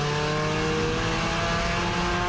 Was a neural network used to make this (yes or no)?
no